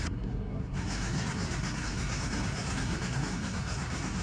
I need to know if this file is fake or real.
fake